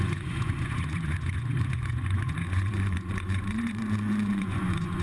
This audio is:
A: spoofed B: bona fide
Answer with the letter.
A